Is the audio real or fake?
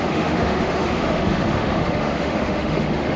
fake